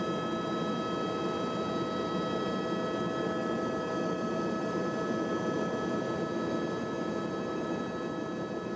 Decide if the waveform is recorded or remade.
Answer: recorded